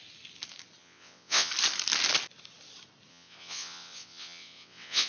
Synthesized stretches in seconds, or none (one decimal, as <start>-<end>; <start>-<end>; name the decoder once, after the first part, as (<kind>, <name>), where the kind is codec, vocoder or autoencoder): 0.8-1.5 (vocoder, WaveNeXt); 3.1-5.1